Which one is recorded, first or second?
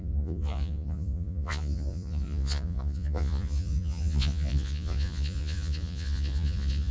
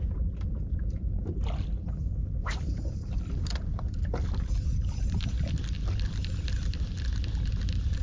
second